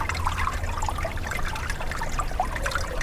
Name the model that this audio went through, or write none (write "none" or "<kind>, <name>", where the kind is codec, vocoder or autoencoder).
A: none